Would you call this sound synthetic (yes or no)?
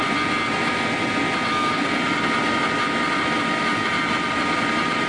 no